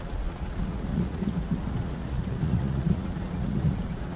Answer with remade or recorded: remade